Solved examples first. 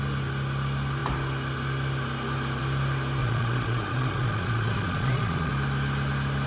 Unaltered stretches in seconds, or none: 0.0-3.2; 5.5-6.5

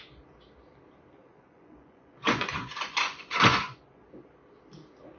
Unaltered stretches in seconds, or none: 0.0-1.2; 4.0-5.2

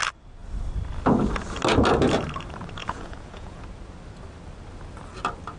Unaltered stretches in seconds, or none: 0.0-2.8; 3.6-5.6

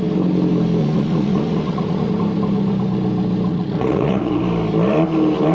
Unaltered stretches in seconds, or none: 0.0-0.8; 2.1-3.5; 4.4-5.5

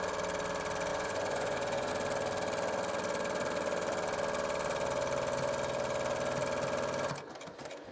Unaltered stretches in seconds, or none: 0.0-0.9; 1.9-7.9